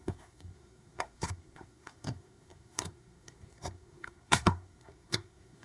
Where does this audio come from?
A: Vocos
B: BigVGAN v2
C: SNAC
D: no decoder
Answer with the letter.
C